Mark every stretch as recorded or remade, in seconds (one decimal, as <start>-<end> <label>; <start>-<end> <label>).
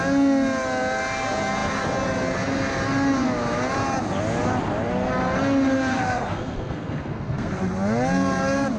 0.0-5.9 recorded; 5.9-7.6 remade; 7.6-8.8 recorded